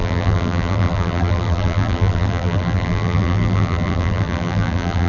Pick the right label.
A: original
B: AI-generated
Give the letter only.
B